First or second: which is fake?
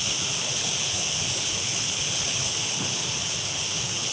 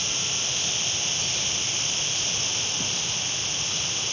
first